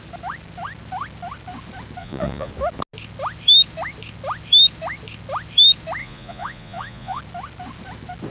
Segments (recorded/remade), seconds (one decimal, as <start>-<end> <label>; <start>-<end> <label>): 0.0-2.0 recorded; 2.0-2.5 remade; 2.5-6.0 recorded; 6.0-7.2 remade; 7.2-8.3 recorded